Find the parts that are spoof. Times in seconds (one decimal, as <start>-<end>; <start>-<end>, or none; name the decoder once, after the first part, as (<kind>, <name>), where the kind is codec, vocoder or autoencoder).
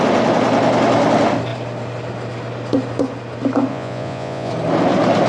3.7-4.5 (vocoder, Vocos)